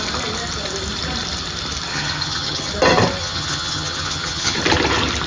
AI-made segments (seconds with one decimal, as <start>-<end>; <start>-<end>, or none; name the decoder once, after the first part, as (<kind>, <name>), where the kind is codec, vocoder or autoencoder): 1.9-2.7 (vocoder, HiFi-GAN); 3.2-4.6